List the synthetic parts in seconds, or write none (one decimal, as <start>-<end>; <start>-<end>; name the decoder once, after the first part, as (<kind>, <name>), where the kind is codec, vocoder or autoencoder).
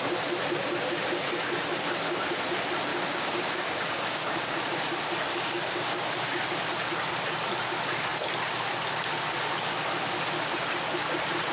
2.9-4.6 (codec, DAC); 5.3-6.4